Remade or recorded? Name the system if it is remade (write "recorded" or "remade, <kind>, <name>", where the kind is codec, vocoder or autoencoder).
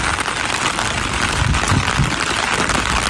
recorded